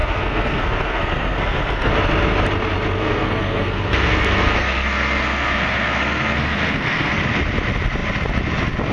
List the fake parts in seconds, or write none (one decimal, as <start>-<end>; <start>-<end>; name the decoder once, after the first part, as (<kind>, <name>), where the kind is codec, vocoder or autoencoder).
0.0-1.9 (codec, SNAC); 3.0-7.2